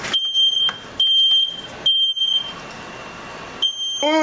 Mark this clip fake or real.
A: real